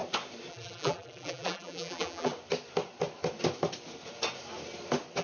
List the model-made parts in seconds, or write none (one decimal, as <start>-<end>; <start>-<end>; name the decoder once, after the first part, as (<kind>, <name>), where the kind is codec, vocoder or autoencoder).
0.5-2.3 (vocoder, BigVGAN v2)